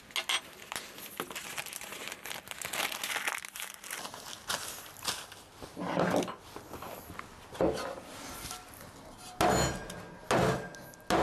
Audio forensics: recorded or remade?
recorded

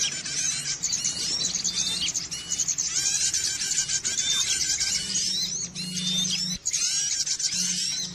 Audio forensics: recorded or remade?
recorded